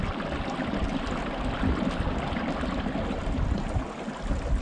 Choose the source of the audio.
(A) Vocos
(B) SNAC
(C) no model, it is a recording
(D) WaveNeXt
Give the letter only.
C